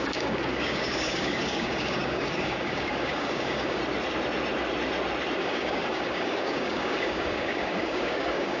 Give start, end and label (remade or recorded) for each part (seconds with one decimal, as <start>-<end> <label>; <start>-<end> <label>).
0.0-3.8 remade; 3.8-5.4 recorded; 5.4-8.6 remade